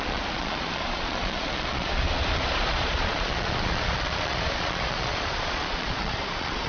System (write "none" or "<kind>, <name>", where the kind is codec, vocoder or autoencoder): vocoder, Vocos